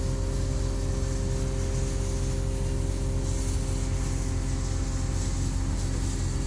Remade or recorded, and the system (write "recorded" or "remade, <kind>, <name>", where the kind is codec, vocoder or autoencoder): recorded